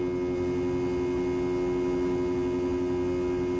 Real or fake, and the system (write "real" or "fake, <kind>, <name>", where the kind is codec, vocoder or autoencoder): real